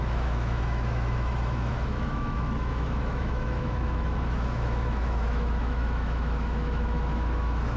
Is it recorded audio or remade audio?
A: remade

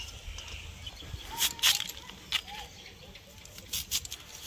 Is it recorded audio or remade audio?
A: recorded